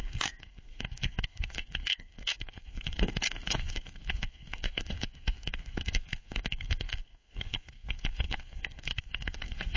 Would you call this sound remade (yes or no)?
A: yes